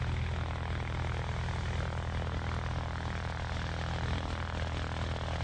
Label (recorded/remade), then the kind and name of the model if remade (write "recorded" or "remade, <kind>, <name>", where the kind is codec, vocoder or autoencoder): recorded